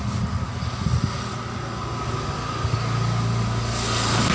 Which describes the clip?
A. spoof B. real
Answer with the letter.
B